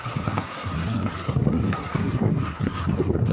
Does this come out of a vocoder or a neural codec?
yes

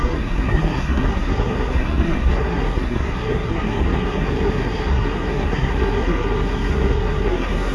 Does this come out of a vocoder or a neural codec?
yes